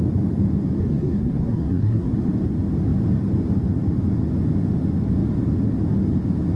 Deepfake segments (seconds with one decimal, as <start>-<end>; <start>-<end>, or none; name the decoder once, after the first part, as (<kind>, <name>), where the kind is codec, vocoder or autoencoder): 0.8-2.1 (codec, SNAC)